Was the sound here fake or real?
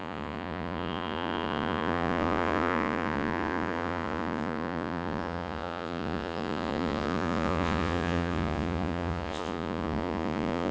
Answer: fake